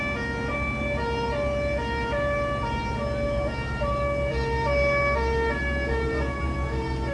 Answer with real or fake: real